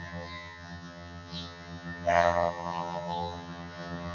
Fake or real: fake